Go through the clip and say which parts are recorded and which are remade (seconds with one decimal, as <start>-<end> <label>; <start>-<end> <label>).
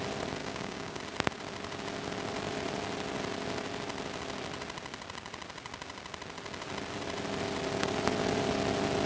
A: 0.0-0.4 recorded; 0.4-1.0 remade; 1.0-9.1 recorded